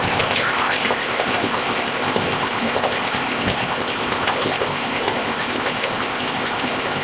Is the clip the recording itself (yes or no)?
no